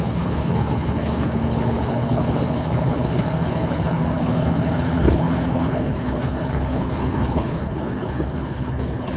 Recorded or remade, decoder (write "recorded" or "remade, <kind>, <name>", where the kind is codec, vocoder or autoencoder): remade, codec, HILCodec